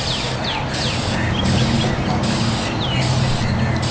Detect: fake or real real